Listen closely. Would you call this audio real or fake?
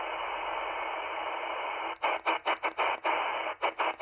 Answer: real